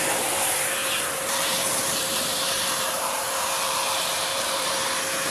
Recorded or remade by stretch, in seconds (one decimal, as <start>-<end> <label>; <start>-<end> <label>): 0.0-5.3 remade